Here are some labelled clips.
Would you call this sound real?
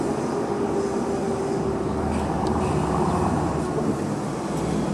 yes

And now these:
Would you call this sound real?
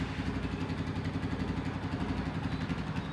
yes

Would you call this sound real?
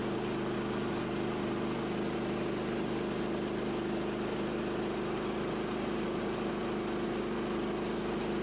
yes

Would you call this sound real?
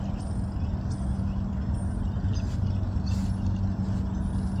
yes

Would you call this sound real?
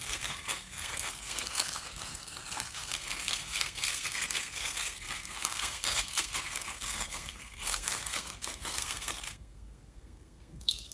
no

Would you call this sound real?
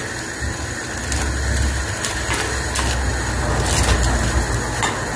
yes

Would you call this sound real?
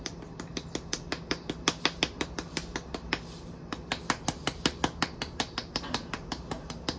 yes